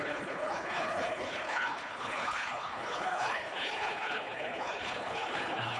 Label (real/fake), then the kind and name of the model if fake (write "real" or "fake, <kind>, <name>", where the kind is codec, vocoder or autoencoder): fake, codec, HILCodec